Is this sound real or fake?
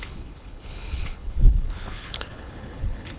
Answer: fake